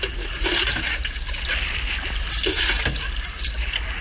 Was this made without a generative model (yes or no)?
yes